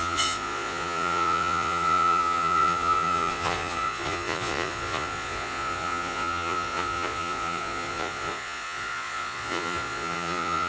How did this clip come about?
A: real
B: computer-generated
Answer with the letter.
B